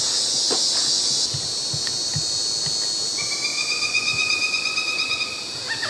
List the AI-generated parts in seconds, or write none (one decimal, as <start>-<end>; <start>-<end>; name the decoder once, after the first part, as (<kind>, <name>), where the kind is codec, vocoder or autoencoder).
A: 3.5-5.2 (vocoder, Vocos)